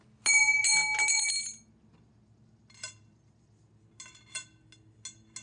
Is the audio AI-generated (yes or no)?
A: no